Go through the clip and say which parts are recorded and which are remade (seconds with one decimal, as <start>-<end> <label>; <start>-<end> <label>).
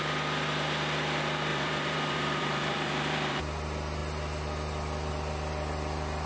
0.0-1.5 recorded; 1.5-3.4 remade; 3.4-6.3 recorded